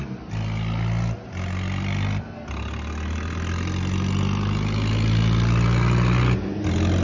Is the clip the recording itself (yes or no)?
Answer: yes